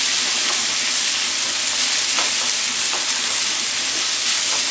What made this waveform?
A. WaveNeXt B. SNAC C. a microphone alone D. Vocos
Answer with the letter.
C